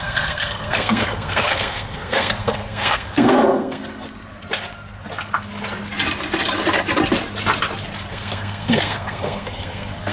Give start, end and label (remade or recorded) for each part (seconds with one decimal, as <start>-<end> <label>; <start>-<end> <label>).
0.0-3.8 remade; 3.8-8.1 recorded; 8.1-10.1 remade